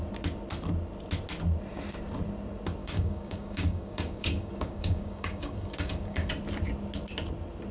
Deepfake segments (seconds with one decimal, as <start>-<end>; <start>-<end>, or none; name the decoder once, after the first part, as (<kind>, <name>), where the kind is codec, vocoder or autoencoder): 2.8-6.3 (codec, DAC)